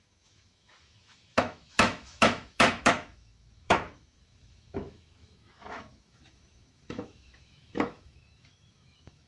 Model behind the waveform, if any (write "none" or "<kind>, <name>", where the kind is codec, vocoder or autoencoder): autoencoder, DAC-VAE